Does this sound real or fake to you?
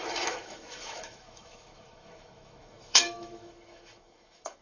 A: fake